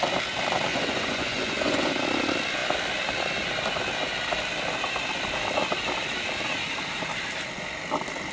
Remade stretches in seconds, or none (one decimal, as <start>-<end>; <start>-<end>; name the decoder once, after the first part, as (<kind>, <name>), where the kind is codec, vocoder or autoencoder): 0.7-1.9 (vocoder, Vocos)

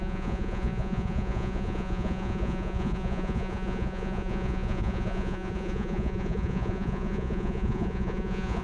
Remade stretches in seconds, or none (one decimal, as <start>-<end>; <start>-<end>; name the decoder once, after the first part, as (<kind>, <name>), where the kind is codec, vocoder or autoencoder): 0.0-8.6 (vocoder, Vocos)

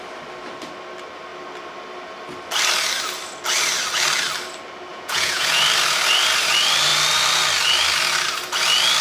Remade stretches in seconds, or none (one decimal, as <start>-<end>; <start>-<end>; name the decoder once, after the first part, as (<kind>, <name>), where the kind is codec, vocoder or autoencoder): 4.9-5.6 (vocoder, Vocos)

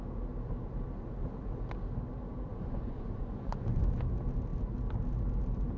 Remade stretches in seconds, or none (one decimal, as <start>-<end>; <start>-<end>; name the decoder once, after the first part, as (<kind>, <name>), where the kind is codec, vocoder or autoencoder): 2.5-3.8 (vocoder, Vocos)